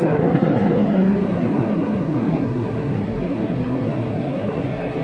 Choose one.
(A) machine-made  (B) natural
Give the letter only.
A